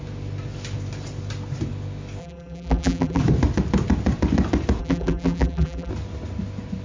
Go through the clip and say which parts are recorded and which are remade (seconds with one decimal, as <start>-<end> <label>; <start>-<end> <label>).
0.0-2.2 recorded; 2.2-3.2 remade; 3.2-4.8 recorded; 4.8-5.9 remade; 5.9-6.8 recorded